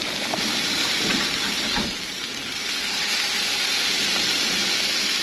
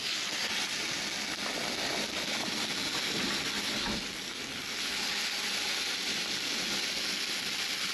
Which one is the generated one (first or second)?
first